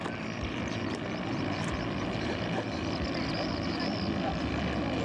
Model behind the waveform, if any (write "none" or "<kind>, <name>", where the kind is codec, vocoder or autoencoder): none